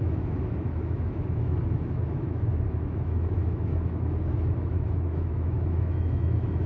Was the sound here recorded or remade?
remade